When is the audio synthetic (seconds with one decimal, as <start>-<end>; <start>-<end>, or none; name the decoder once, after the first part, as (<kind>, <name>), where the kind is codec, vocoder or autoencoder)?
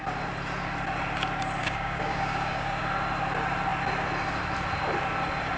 1.6-2.8 (codec, DAC)